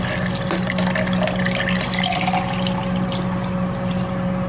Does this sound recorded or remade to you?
recorded